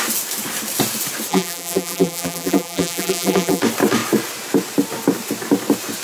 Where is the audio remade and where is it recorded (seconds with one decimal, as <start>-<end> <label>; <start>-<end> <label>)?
0.0-1.3 recorded; 1.3-3.6 remade; 3.6-6.0 recorded